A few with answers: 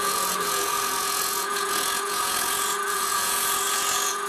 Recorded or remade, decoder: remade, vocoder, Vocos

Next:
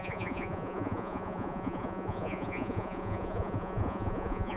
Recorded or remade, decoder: remade, vocoder, Vocos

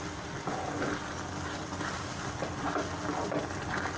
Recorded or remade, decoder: recorded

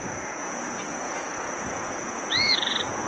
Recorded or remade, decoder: remade, vocoder, Vocos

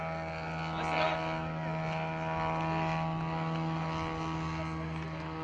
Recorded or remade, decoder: recorded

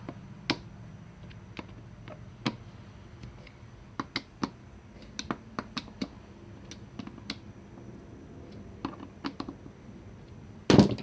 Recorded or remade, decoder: recorded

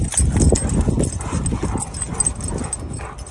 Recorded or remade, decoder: recorded